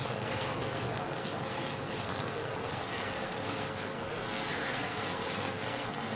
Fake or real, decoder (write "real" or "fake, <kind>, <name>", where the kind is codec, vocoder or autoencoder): fake, codec, SNAC